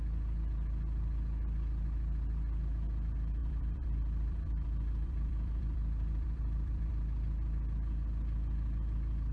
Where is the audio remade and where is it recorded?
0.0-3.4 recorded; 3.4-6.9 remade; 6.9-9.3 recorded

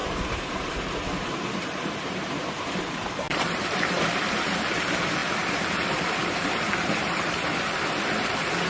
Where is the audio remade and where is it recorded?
0.0-8.7 remade

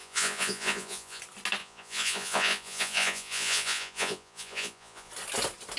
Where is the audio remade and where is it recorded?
0.0-1.2 remade; 1.2-1.6 recorded; 1.6-5.1 remade; 5.1-5.8 recorded

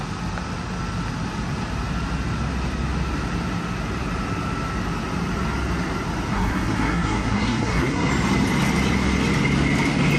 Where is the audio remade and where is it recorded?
0.0-6.3 recorded; 6.3-8.1 remade; 8.1-10.2 recorded

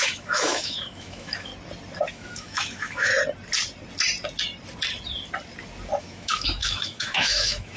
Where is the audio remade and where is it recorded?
0.0-1.5 remade; 1.5-2.1 recorded; 2.1-3.1 remade; 3.1-6.0 recorded; 6.0-7.8 remade